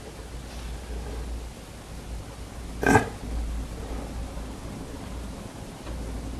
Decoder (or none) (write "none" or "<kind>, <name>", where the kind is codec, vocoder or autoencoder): none